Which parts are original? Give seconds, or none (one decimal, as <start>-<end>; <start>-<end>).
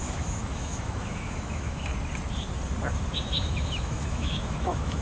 1.9-3.3